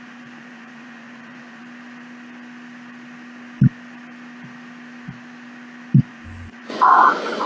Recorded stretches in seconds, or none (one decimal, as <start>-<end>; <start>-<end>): 1.6-6.1